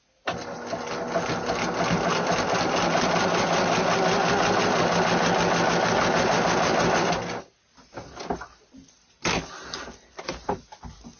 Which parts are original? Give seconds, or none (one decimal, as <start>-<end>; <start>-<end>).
0.0-11.2